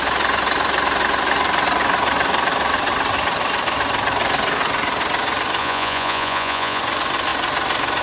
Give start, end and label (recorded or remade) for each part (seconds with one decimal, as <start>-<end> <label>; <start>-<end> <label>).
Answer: 0.0-5.6 recorded; 5.6-6.8 remade; 6.8-8.0 recorded